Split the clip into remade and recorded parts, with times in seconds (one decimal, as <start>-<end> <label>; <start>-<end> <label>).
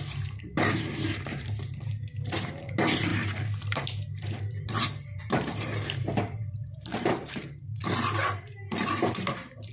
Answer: 0.0-7.8 remade; 7.8-8.9 recorded; 8.9-9.7 remade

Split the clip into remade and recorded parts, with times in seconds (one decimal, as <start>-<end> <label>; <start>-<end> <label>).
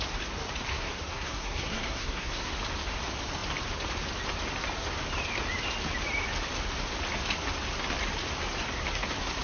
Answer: 0.0-0.7 recorded; 0.7-2.5 remade; 2.5-9.4 recorded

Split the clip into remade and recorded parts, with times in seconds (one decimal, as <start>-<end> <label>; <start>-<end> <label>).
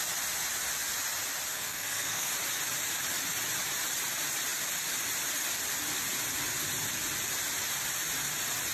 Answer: 0.0-1.5 recorded; 1.5-2.3 remade; 2.3-8.7 recorded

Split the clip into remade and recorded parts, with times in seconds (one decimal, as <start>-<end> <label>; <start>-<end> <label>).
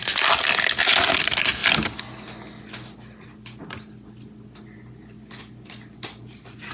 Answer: 0.0-6.7 recorded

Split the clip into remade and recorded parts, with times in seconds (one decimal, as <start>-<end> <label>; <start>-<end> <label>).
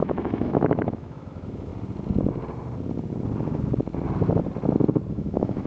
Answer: 0.0-1.7 remade; 1.7-5.1 recorded; 5.1-5.7 remade